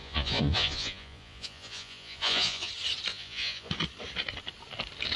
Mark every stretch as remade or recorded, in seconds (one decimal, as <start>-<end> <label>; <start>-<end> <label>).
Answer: 0.0-2.7 remade; 2.7-3.1 recorded; 3.1-3.7 remade; 3.7-5.2 recorded